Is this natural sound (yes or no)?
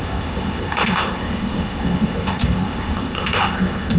no